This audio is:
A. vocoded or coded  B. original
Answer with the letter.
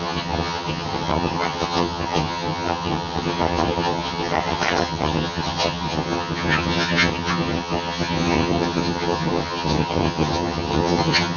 A